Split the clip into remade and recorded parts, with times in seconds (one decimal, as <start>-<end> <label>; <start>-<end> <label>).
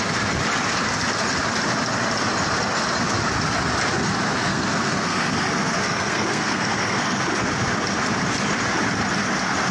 0.0-4.5 recorded; 4.5-7.2 remade; 7.2-9.7 recorded